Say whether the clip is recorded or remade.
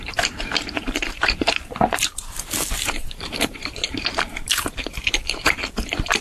remade